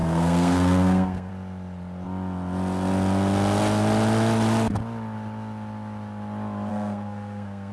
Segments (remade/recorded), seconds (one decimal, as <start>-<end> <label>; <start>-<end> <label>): 0.0-1.3 remade; 1.3-6.7 recorded; 6.7-7.7 remade